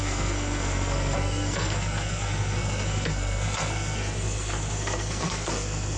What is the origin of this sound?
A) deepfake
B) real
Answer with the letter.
A